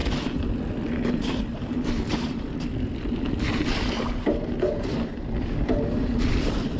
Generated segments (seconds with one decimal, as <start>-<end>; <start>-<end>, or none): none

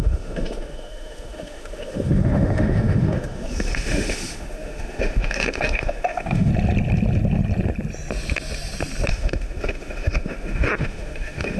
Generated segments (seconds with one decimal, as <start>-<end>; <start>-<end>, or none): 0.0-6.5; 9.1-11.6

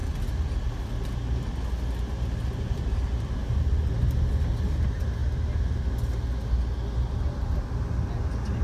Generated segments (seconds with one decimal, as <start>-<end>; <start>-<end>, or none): none